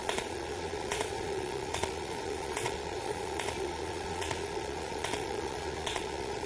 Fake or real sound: fake